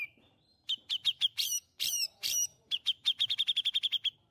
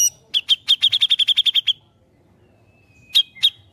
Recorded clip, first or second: second